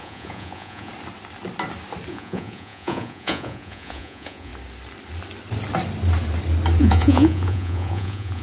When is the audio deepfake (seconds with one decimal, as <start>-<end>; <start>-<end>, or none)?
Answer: 0.0-0.9; 2.1-4.5; 6.8-8.4